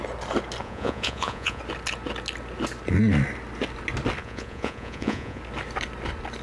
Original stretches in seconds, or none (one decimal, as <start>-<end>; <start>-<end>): 0.0-0.6; 1.6-4.2; 5.4-6.4